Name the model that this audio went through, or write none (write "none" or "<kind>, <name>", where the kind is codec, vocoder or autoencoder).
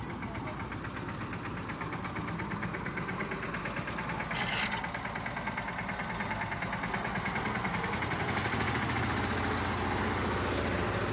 none